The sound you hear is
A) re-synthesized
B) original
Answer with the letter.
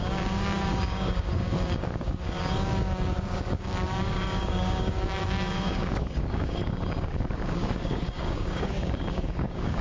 A